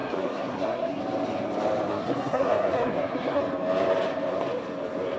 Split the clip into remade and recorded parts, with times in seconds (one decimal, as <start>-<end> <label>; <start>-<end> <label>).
0.0-1.0 remade; 1.0-1.9 recorded; 1.9-3.4 remade; 3.4-5.2 recorded